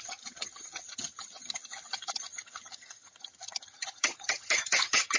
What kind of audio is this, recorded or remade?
remade